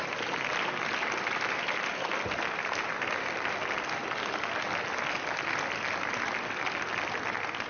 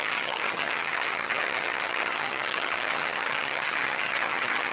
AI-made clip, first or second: second